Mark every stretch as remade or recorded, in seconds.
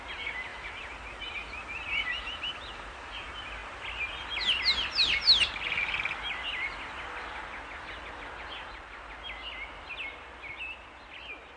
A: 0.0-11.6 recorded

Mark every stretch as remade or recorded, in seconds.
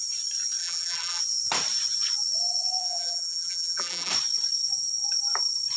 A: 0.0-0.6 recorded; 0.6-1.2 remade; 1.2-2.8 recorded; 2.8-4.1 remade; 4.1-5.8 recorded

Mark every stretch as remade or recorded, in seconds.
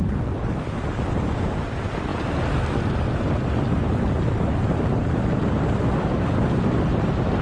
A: 0.0-7.4 recorded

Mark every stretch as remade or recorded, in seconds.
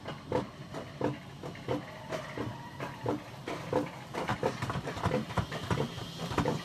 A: 0.0-2.5 recorded; 2.5-3.5 remade; 3.5-4.3 recorded; 4.3-5.3 remade; 5.3-6.6 recorded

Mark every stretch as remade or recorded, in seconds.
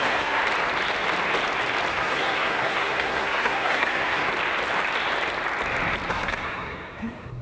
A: 0.0-0.4 remade; 0.4-1.9 recorded; 1.9-4.3 remade; 4.3-6.1 recorded; 6.1-7.4 remade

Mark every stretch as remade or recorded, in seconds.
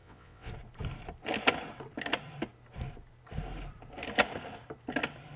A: 0.0-0.5 remade; 0.5-5.4 recorded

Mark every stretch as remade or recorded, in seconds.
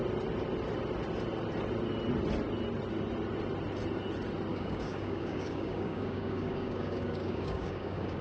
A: 0.0-4.5 recorded; 4.5-8.2 remade